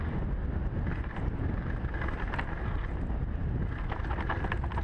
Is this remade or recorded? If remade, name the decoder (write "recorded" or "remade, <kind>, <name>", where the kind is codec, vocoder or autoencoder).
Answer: recorded